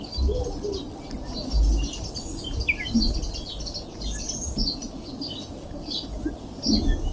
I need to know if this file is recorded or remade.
recorded